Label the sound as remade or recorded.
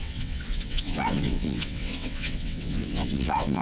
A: remade